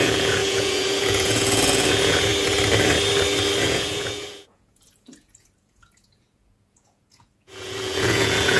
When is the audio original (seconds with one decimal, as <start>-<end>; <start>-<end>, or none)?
2.3-3.6